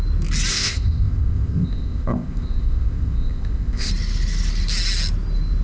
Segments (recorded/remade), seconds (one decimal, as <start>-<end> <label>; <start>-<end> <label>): 0.0-0.5 recorded; 0.5-3.9 remade; 3.9-5.6 recorded